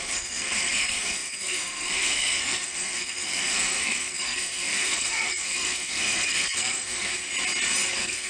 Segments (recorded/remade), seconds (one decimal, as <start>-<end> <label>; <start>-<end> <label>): 0.0-7.1 remade; 7.1-7.9 recorded; 7.9-8.3 remade